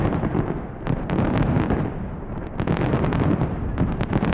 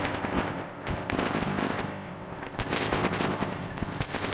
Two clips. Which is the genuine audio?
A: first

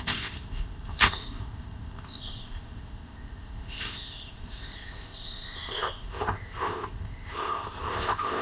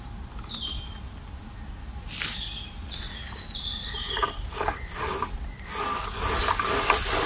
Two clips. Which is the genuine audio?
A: second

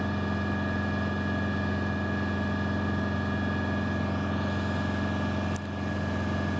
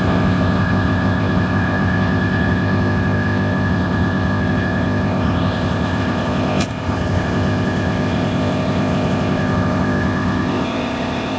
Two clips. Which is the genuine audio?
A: first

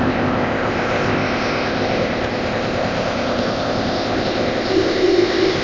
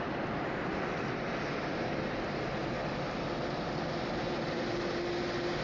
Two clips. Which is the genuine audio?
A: second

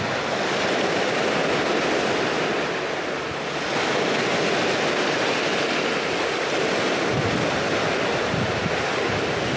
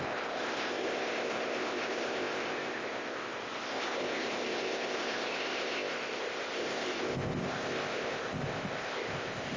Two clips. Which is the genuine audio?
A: first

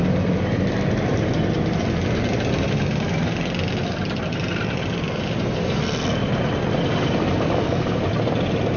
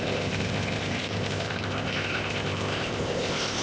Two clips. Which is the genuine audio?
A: first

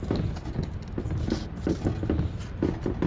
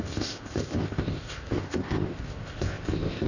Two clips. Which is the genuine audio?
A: first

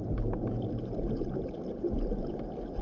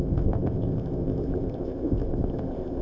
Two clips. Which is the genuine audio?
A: first